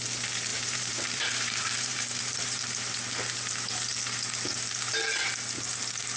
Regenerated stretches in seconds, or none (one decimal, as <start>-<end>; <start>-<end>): 0.5-2.9